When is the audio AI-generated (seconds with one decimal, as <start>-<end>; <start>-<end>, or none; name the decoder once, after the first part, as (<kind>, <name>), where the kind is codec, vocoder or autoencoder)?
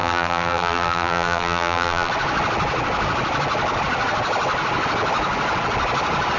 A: 0.0-2.1 (vocoder, BigVGAN v2)